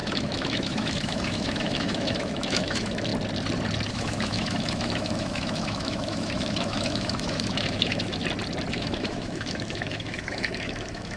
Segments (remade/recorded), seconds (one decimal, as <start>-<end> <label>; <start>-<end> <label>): 0.0-3.1 remade; 3.1-3.9 recorded; 3.9-8.2 remade; 8.2-8.7 recorded; 8.7-11.2 remade